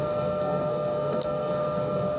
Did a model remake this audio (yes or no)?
yes